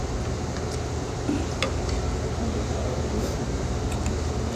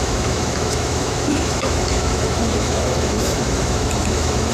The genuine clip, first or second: first